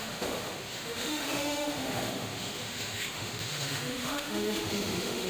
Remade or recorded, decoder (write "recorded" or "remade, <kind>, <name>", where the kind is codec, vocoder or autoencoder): remade, autoencoder, DAC-VAE